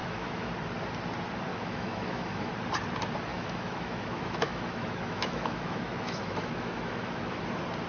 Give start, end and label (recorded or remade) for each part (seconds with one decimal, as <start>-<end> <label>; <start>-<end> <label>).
0.0-0.5 remade; 0.5-1.5 recorded; 1.5-2.5 remade; 2.5-3.3 recorded; 3.3-7.4 remade; 7.4-7.9 recorded